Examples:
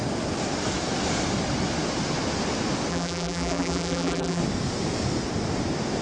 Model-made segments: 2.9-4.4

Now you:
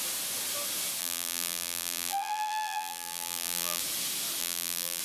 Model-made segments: 1.0-3.8; 4.4-5.0

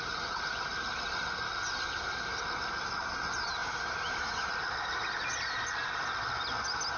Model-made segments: 3.6-4.5